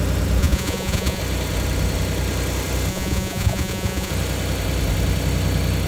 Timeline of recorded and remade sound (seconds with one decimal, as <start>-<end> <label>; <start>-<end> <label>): 0.0-0.4 recorded; 0.4-1.2 remade; 1.2-2.9 recorded; 2.9-4.1 remade; 4.1-5.9 recorded